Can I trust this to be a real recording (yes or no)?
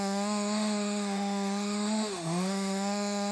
no